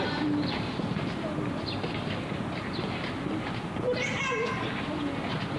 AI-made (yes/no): no